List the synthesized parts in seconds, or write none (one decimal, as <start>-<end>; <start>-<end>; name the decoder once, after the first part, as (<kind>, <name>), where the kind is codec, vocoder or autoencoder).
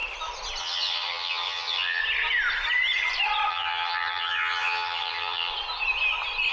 0.6-2.0 (vocoder, HiFi-GAN); 3.5-5.5